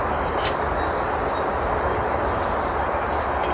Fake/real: real